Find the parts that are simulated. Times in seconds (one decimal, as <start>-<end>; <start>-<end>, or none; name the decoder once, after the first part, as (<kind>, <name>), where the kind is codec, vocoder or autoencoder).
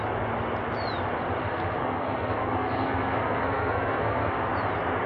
1.4-4.5 (codec, SNAC)